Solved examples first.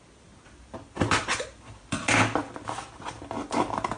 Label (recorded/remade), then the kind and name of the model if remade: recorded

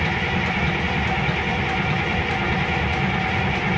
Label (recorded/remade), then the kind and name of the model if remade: recorded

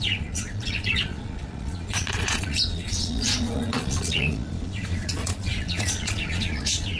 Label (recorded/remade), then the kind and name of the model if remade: remade, vocoder, Vocos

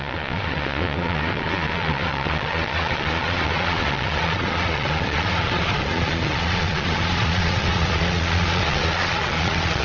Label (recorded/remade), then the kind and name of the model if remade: remade, vocoder, Vocos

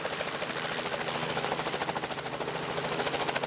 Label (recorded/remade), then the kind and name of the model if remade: recorded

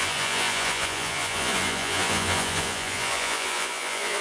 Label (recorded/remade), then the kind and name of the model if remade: remade, vocoder, Vocos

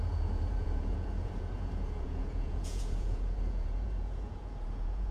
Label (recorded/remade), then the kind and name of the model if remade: remade, vocoder, Vocos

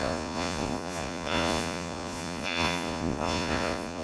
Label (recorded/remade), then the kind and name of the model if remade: remade, vocoder, Vocos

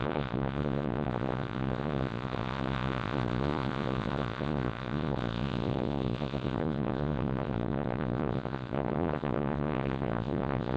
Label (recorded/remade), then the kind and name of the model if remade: remade, vocoder, Vocos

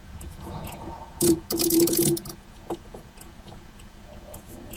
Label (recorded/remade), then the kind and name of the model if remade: remade, vocoder, Vocos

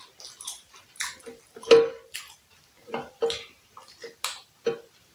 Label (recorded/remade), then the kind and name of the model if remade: recorded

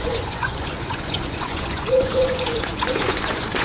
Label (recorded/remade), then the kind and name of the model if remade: remade, vocoder, Vocos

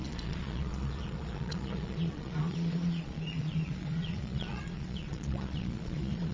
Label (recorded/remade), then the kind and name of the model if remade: remade, vocoder, Vocos